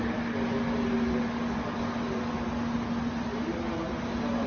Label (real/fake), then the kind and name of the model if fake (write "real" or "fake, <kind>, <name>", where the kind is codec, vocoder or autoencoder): real